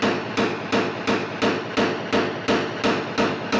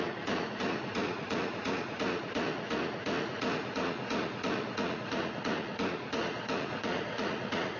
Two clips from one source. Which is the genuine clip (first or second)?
first